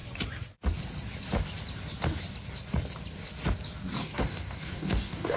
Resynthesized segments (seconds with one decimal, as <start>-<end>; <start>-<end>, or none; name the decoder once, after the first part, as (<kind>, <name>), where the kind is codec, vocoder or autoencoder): 4.0-5.4 (codec, DAC)